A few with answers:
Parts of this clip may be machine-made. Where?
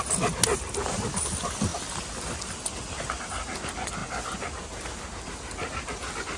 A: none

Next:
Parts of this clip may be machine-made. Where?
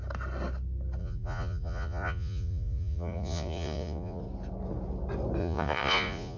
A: 1.0-4.2 (vocoder, Vocos); 5.4-6.4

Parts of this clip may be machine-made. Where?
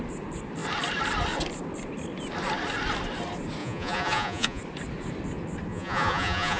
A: 3.6-4.6 (vocoder, Vocos); 5.7-6.6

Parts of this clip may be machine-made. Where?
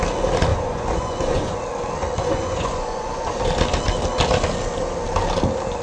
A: 0.5-1.6 (vocoder, Vocos); 2.2-3.4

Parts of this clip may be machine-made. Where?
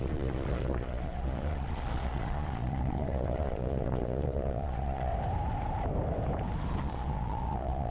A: 0.0-5.1 (vocoder, Vocos); 6.8-7.9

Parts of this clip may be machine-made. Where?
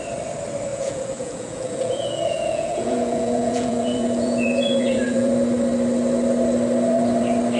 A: 0.7-5.3 (vocoder, Vocos)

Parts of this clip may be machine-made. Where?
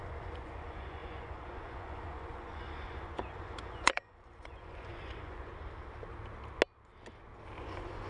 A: 0.0-5.5 (vocoder, Vocos); 7.6-8.1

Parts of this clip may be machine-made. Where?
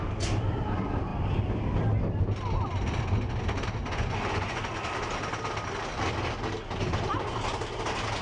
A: 3.8-4.6 (vocoder, Vocos)